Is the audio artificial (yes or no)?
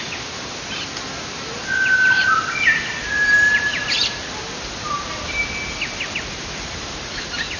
no